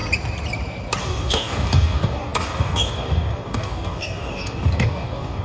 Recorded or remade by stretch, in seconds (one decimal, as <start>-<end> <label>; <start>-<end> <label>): 0.0-1.0 recorded; 1.0-5.4 remade